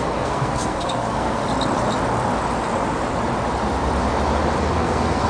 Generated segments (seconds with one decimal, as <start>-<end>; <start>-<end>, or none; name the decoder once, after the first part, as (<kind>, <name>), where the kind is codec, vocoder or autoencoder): 0.0-1.4 (codec, SNAC); 4.6-5.3